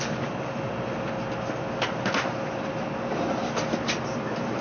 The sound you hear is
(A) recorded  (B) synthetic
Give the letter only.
A